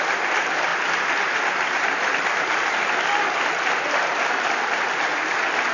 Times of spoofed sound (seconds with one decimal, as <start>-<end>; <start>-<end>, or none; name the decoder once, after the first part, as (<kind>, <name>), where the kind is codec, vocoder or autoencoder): none